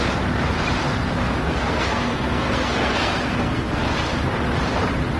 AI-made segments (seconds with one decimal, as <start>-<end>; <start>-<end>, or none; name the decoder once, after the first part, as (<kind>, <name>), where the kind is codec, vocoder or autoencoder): 1.4-3.8 (codec, SNAC)